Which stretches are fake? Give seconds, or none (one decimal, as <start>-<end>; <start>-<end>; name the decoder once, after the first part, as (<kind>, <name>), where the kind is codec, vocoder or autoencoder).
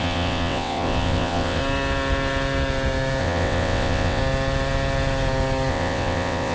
0.0-1.6 (vocoder, WaveNeXt); 3.2-4.2; 5.7-6.5